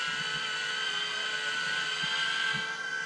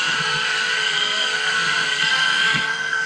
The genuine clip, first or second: first